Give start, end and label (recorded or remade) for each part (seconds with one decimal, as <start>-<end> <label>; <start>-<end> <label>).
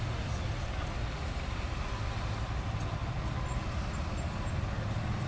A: 0.0-5.3 recorded